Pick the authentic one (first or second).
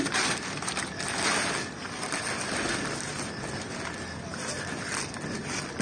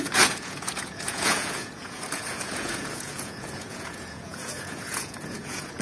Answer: first